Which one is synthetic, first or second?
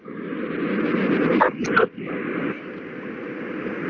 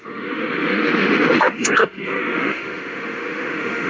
second